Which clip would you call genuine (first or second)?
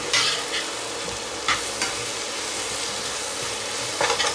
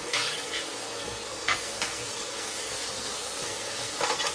first